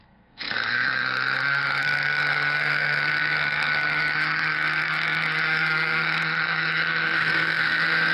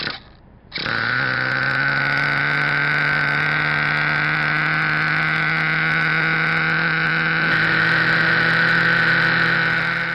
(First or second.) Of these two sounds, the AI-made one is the first